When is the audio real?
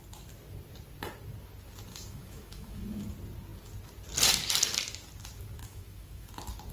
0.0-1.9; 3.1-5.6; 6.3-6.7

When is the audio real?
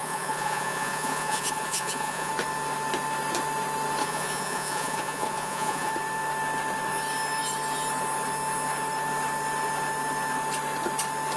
2.3-4.0; 5.9-11.4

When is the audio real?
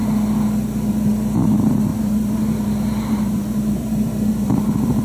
0.0-1.9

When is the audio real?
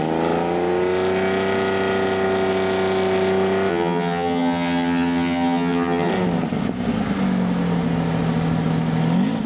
0.0-3.7; 6.1-9.5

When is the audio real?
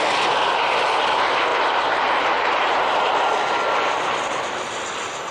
0.0-1.5; 2.8-5.3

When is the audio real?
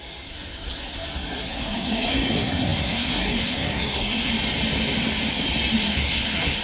4.3-5.8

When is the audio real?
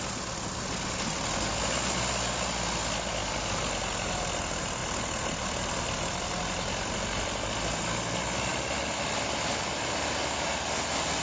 0.0-11.2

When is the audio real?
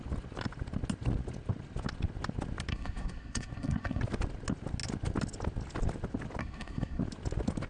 0.0-2.7; 4.0-6.4; 7.0-7.7